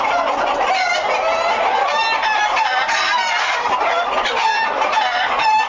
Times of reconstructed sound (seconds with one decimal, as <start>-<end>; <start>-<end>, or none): none